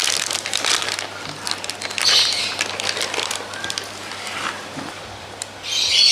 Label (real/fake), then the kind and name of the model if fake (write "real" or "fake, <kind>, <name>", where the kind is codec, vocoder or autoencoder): real